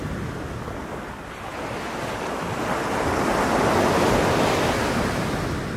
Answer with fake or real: real